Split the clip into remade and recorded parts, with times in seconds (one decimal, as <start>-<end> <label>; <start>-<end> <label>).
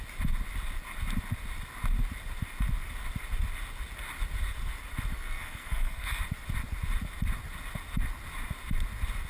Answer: 0.0-5.1 recorded; 5.1-6.2 remade; 6.2-9.3 recorded